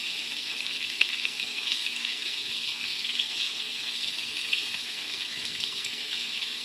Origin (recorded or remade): remade